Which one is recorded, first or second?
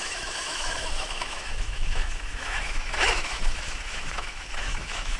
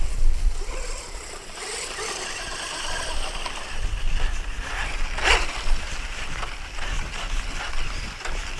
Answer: second